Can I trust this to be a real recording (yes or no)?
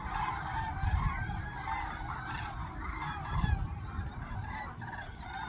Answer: no